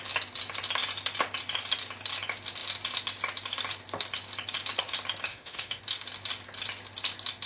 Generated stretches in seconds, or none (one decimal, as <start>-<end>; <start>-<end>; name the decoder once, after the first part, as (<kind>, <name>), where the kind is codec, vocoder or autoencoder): 5.3-5.8 (autoencoder, DAC-VAE)